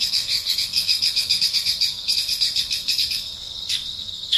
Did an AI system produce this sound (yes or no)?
yes